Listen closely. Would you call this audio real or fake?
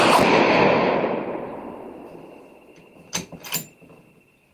real